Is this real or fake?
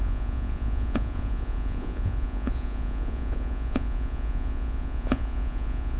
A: fake